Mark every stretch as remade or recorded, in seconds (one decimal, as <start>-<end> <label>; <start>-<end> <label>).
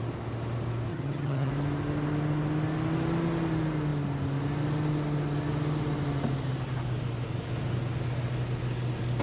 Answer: 0.0-0.9 recorded; 0.9-1.5 remade; 1.5-9.2 recorded